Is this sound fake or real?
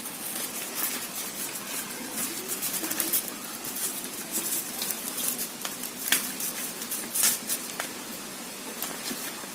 real